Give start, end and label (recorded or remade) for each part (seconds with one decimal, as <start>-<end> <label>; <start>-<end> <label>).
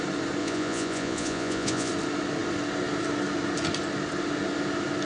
0.0-0.4 recorded; 0.4-1.9 remade; 1.9-5.1 recorded